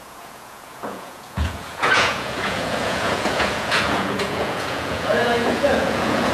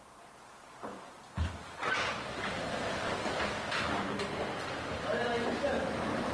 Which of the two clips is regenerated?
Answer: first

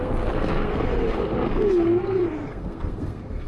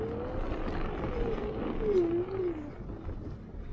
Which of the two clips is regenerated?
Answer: first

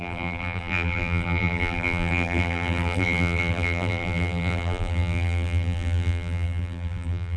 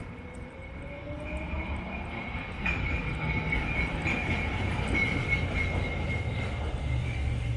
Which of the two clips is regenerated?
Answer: first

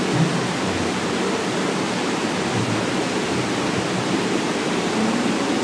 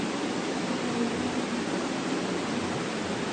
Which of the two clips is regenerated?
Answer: second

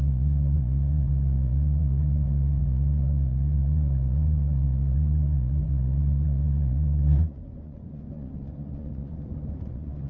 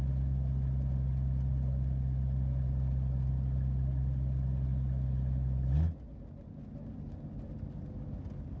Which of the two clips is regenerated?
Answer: first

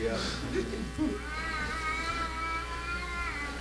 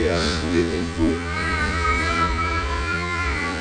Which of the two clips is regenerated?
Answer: second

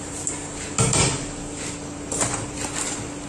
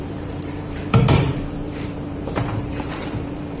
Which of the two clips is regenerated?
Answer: second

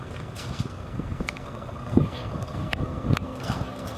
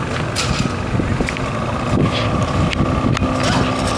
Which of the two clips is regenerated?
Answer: first